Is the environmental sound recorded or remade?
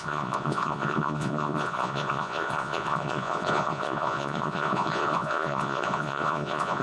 remade